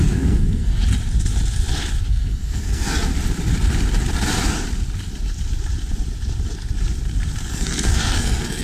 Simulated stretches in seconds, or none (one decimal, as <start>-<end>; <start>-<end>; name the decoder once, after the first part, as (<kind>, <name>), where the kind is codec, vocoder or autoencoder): 0.0-0.8 (codec, SNAC); 2.1-3.1; 7.5-8.6